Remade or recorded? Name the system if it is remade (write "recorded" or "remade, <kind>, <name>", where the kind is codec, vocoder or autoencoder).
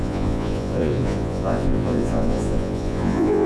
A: remade, vocoder, Vocos